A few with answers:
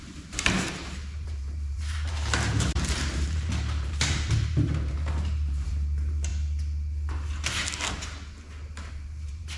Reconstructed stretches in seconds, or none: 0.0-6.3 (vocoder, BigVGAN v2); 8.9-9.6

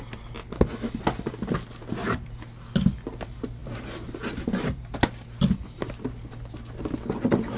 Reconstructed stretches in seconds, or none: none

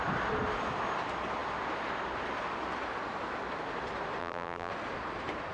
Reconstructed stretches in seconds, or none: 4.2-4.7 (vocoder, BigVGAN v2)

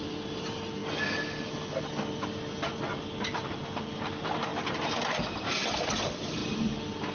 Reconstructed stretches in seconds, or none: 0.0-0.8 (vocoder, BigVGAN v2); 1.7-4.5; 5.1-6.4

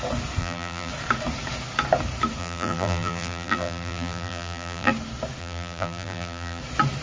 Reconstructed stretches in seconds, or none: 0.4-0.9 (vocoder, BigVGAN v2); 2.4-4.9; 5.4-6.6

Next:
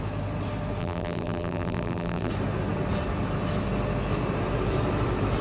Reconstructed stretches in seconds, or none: 0.8-2.3 (vocoder, BigVGAN v2)

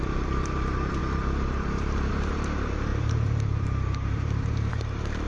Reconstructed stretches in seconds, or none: 0.0-5.3 (vocoder, BigVGAN v2)

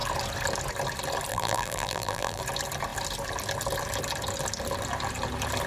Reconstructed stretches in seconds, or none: 1.3-2.4 (vocoder, BigVGAN v2)